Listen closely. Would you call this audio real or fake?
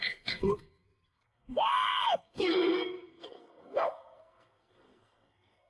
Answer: fake